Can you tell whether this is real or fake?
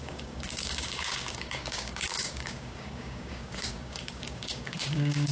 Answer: fake